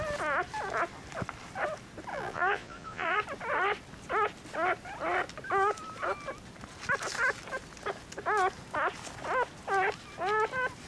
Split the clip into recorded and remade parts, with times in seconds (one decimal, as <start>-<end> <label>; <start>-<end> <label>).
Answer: 0.0-2.1 recorded; 2.1-3.2 remade; 3.2-10.9 recorded